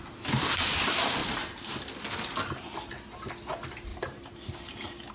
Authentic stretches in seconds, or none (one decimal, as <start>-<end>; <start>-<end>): 0.0-3.9